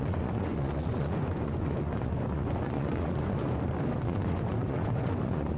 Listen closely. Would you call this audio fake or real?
fake